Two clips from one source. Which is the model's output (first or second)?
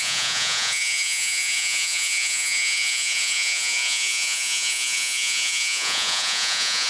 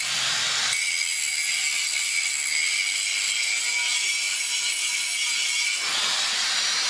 first